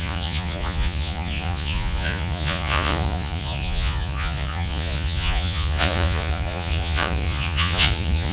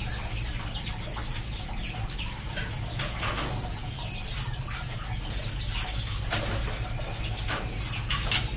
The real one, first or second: second